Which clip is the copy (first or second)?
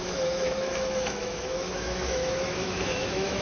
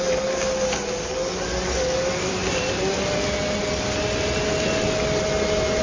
first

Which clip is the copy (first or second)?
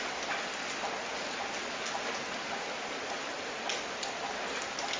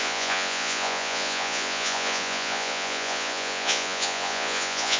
second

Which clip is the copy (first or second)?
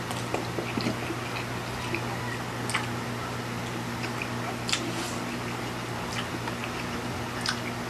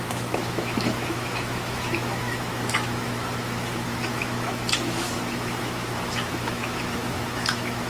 second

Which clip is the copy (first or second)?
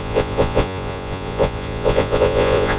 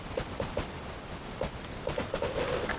first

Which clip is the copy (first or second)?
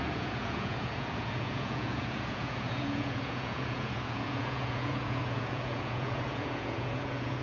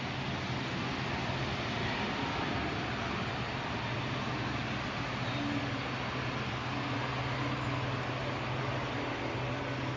first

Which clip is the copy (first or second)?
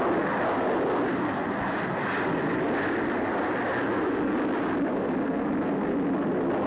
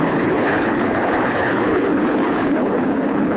second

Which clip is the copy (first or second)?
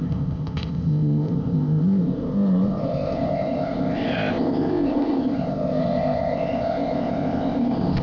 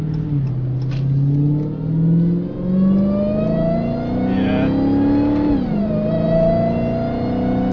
first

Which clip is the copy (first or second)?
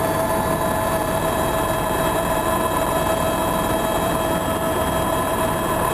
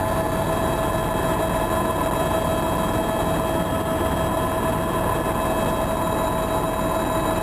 first